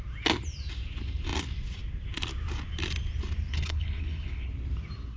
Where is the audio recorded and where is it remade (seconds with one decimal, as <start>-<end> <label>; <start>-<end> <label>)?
0.0-3.5 recorded; 3.5-4.5 remade; 4.5-5.2 recorded